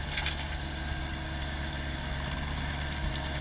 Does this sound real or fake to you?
real